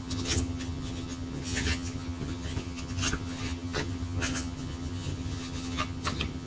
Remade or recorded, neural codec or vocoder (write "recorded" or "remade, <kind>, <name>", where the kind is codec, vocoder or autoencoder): remade, vocoder, HiFi-GAN